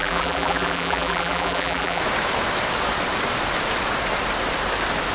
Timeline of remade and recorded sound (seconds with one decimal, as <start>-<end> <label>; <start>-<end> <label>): 0.0-2.0 remade; 2.0-5.1 recorded